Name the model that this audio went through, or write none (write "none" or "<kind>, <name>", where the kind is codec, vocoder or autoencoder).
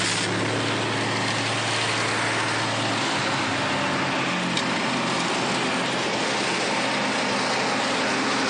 none